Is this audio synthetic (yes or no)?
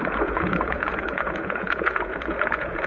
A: yes